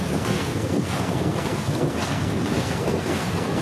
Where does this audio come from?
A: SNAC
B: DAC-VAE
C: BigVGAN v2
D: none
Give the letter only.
A